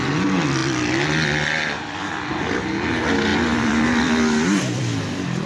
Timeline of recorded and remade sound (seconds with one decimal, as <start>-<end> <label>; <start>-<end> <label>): 0.0-5.5 recorded